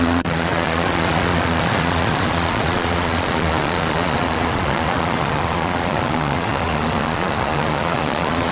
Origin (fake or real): fake